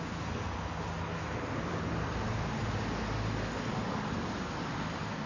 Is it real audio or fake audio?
real